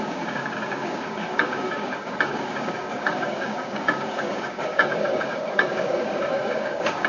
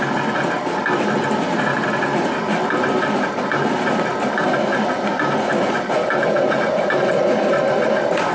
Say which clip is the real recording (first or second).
second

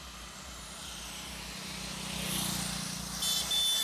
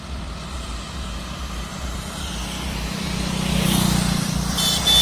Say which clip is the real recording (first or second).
first